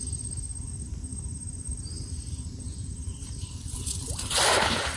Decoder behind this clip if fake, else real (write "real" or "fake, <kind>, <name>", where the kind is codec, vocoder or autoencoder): fake, vocoder, BigVGAN v2